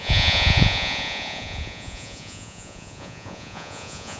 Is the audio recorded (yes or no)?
no